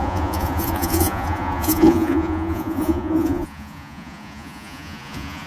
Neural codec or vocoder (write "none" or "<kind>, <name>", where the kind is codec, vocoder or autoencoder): vocoder, Vocos